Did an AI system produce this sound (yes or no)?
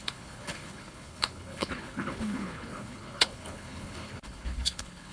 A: yes